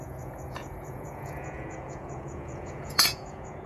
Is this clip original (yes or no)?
no